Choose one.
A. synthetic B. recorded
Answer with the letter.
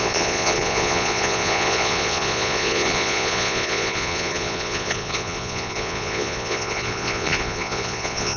A